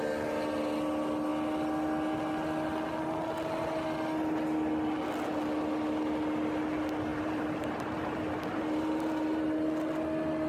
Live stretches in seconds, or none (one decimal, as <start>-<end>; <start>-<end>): 0.0-7.1; 9.7-10.5